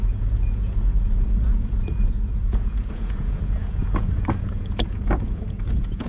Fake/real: fake